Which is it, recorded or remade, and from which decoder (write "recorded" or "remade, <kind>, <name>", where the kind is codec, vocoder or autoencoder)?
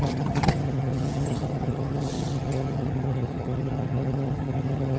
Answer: remade, vocoder, HiFi-GAN